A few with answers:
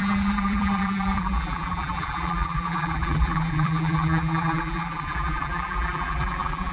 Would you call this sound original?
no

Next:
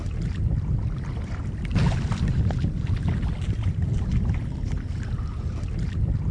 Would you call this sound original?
yes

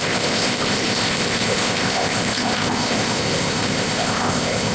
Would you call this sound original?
no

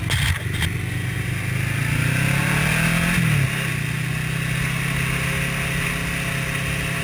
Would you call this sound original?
yes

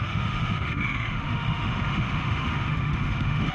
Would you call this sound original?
no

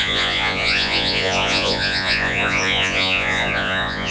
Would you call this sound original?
no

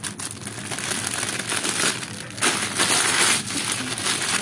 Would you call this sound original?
yes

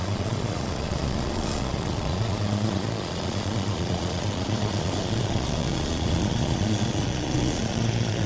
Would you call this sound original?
no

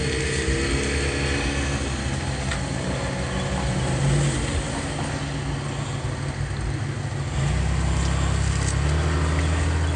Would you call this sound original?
yes